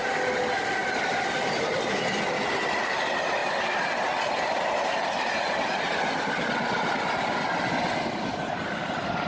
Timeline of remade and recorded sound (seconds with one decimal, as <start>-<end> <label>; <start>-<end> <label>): 0.0-9.3 recorded